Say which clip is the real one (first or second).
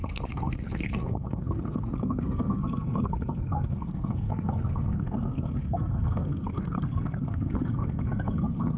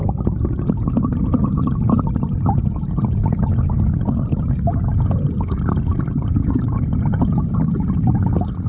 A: second